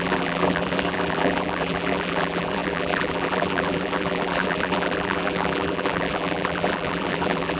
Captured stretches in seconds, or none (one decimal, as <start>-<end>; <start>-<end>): none